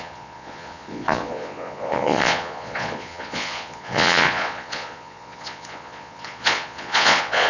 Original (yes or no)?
no